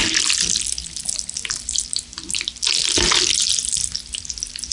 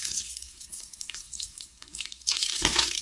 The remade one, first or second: second